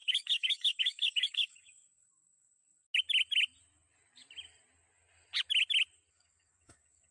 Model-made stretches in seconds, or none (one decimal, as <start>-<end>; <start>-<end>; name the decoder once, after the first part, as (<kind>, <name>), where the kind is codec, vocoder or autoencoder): 0.0-2.8 (codec, DAC); 6.1-7.1

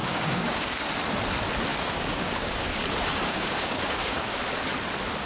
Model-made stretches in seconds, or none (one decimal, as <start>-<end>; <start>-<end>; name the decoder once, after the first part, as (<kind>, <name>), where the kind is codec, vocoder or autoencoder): 0.0-0.9 (codec, DAC); 1.7-2.5; 3.3-4.4